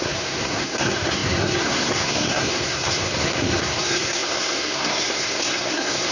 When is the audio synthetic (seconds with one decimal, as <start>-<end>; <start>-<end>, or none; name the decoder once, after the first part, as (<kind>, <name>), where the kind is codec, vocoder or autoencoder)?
0.0-6.1 (codec, SNAC)